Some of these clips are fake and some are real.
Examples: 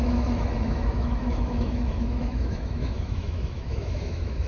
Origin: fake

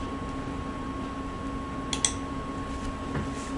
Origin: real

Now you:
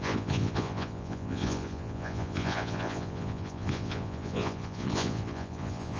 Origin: fake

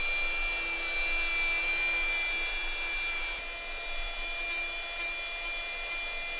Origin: real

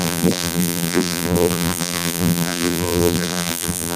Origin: fake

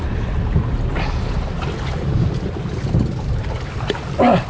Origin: real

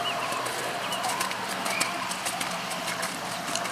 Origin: real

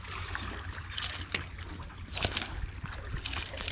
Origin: real